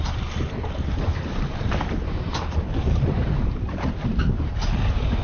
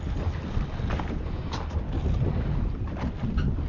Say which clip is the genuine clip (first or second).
second